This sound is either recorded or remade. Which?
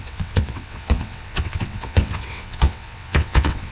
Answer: remade